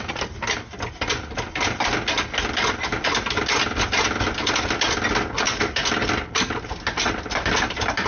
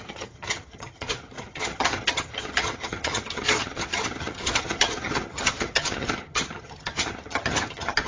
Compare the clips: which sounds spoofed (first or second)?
second